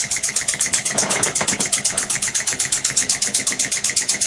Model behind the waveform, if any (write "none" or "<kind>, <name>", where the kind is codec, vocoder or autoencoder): codec, HILCodec